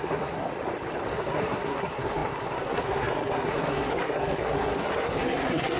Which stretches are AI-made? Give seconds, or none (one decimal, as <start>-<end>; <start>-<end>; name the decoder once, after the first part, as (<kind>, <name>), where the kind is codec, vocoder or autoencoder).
0.0-0.5 (codec, SNAC); 1.1-5.8